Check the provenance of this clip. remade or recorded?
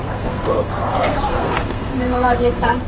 remade